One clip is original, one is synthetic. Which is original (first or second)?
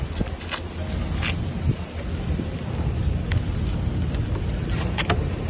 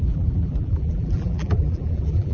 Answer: first